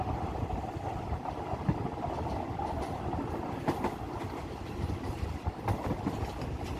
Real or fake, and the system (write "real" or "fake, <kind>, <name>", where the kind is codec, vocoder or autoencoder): real